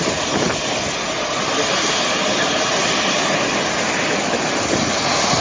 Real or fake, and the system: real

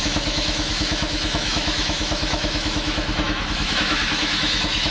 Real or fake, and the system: fake, autoencoder, DAC-VAE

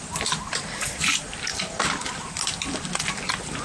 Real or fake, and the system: fake, vocoder, BigVGAN v2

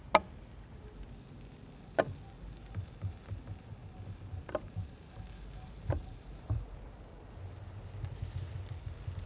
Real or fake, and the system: real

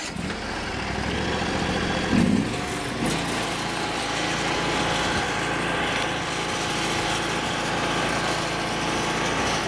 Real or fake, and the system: real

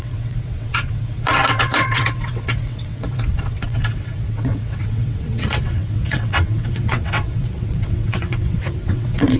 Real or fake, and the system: fake, vocoder, WaveNeXt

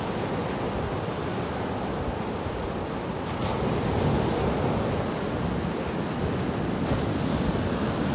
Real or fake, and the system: real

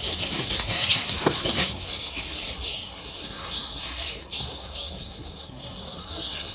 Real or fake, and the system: fake, codec, SNAC